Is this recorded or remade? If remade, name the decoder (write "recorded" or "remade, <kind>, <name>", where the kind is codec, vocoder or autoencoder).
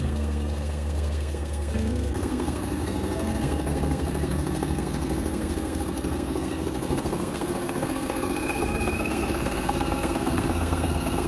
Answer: remade, codec, SNAC